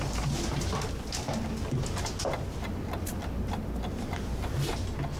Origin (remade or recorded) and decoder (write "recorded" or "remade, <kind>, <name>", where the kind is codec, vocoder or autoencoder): recorded